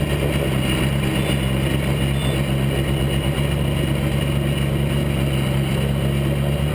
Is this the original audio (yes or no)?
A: yes